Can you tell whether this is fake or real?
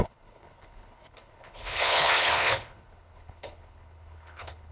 fake